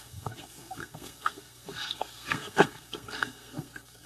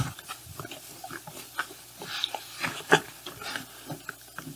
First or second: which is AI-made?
first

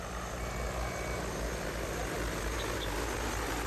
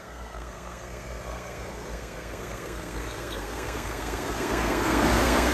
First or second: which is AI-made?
second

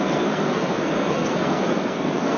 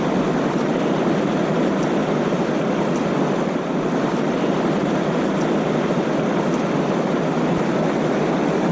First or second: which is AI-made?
first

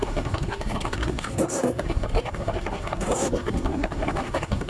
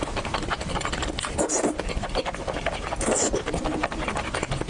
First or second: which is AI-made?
first